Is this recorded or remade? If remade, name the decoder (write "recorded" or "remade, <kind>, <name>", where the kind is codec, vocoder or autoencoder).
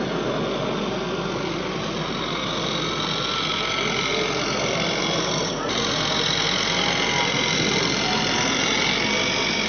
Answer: recorded